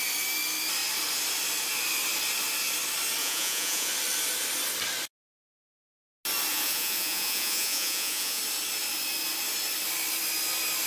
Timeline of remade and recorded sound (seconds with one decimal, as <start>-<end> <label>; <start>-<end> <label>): 0.0-3.2 recorded; 3.2-3.9 remade; 3.9-6.5 recorded; 6.5-8.4 remade; 8.4-10.9 recorded